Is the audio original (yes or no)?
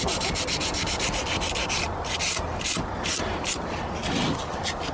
yes